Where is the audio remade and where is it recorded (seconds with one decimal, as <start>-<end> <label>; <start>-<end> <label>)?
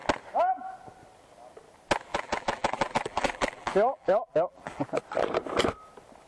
0.0-2.1 recorded; 2.1-4.9 remade; 4.9-6.3 recorded